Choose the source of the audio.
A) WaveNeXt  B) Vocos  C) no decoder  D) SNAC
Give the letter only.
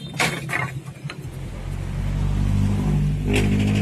C